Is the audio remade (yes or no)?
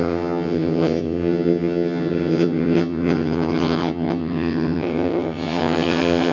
yes